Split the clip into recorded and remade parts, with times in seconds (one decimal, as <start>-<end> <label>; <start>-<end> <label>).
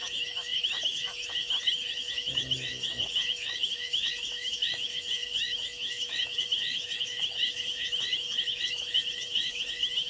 0.0-10.1 remade